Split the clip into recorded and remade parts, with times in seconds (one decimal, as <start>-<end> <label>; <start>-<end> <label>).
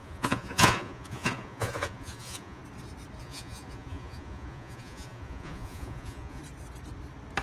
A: 0.0-2.6 remade; 2.6-3.2 recorded; 3.2-6.4 remade; 6.4-7.4 recorded